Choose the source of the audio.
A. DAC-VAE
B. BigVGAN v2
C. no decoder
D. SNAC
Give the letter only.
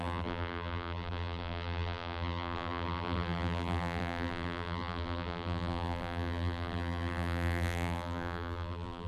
B